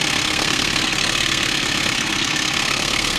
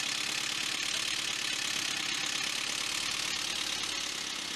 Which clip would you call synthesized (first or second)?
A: first